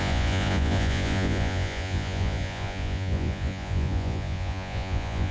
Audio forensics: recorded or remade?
remade